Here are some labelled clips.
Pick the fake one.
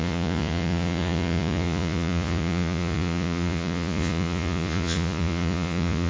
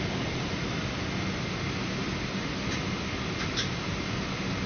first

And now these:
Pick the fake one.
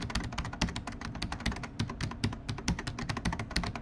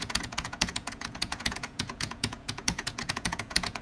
second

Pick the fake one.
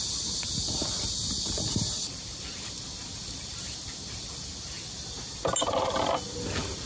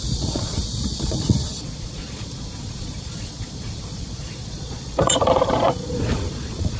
second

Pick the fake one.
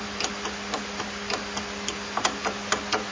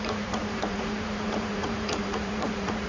second